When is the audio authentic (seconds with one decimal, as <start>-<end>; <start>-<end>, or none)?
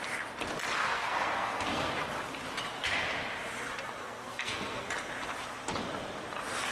0.0-0.8; 1.9-4.0; 4.9-6.7